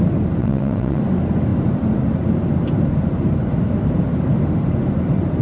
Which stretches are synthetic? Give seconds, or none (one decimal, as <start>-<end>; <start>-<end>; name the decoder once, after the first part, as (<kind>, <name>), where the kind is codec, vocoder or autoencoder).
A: 0.4-1.0 (vocoder, WaveNeXt)